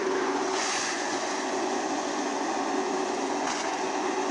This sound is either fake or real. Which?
fake